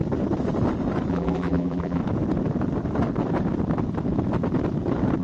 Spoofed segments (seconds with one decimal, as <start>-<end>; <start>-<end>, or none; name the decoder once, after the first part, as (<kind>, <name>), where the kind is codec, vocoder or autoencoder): 1.1-2.0 (vocoder, BigVGAN v2)